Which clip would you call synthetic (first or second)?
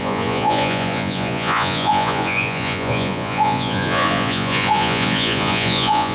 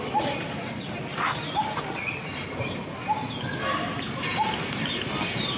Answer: first